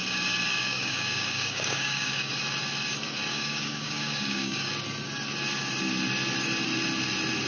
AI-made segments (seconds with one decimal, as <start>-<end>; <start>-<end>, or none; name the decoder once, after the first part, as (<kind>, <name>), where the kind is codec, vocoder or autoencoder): 0.5-2.3 (codec, DAC); 3.3-4.7

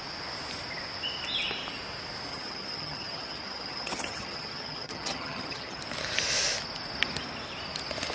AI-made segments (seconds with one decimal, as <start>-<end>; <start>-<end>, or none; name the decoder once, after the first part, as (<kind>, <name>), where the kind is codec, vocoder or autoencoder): 2.3-5.8 (vocoder, HiFi-GAN)

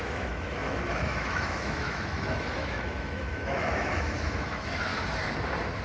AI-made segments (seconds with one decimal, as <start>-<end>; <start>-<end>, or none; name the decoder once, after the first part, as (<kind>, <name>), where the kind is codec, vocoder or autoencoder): 0.0-4.9 (autoencoder, DAC-VAE)

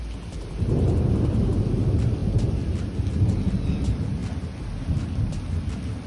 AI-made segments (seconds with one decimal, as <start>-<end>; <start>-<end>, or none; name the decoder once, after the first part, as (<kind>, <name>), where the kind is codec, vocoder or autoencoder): none

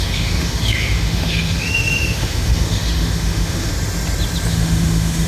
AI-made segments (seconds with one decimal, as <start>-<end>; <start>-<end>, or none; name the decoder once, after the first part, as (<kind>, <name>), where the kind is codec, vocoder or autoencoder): 0.0-3.7 (autoencoder, DAC-VAE); 4.5-5.3

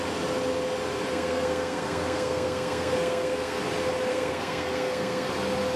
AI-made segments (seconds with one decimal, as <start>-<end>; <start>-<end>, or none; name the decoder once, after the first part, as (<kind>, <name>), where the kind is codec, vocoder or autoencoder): 1.1-3.6 (codec, SNAC); 4.1-5.3